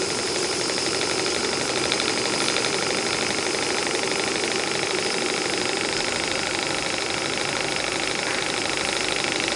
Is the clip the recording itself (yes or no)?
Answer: no